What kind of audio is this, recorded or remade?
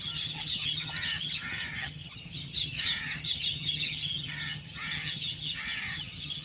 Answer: remade